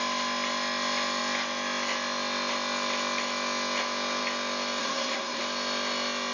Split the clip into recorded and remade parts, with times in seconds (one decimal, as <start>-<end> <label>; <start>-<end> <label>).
0.0-4.8 recorded; 4.8-5.4 remade; 5.4-6.3 recorded